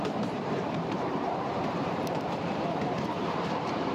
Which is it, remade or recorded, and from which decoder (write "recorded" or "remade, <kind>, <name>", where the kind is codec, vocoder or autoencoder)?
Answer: remade, vocoder, BigVGAN v2